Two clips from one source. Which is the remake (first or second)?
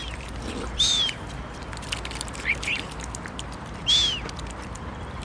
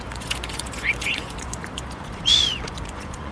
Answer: second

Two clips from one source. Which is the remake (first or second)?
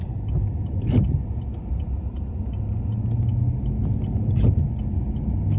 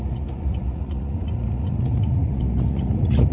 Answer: second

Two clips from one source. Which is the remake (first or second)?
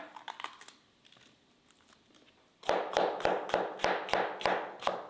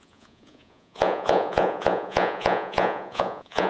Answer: second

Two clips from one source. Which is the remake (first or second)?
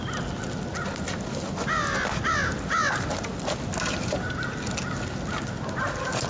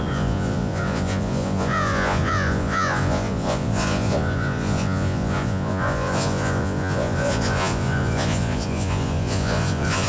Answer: second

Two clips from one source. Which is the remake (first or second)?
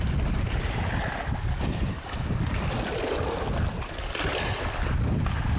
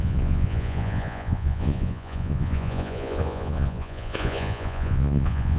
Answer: second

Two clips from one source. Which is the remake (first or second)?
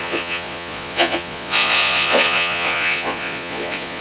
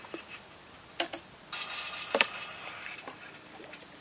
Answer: first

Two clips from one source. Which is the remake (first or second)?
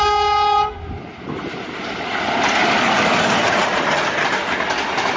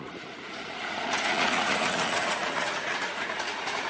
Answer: second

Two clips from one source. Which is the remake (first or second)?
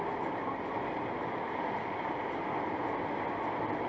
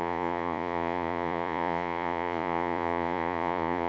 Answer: second